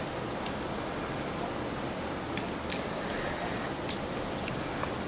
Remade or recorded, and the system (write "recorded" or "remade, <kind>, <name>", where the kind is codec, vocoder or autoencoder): recorded